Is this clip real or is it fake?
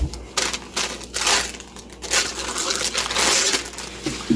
real